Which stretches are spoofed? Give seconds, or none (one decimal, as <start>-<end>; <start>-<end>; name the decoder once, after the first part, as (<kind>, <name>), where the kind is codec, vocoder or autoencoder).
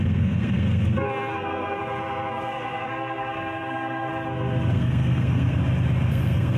0.0-1.8 (codec, SNAC); 2.3-4.1; 4.7-5.6; 6.1-6.6